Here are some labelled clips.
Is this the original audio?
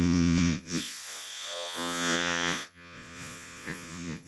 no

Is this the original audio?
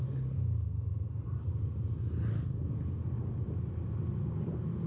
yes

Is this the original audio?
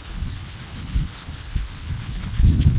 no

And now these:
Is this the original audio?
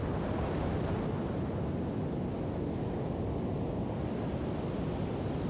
yes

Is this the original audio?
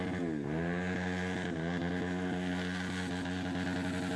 yes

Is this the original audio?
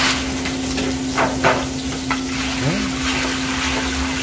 yes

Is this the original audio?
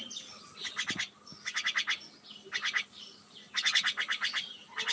yes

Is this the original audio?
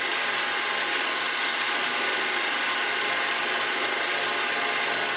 yes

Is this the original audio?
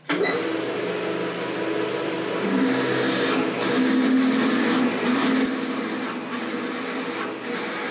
yes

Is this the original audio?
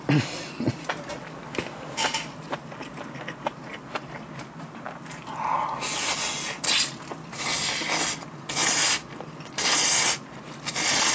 yes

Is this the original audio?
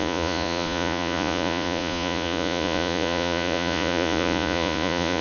no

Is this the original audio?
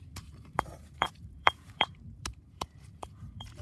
no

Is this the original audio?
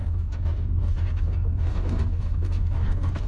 no